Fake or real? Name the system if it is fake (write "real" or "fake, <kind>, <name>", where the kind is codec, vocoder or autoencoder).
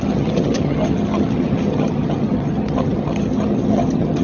fake, vocoder, HiFi-GAN